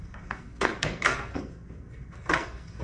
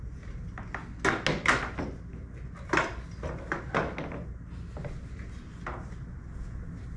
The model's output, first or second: first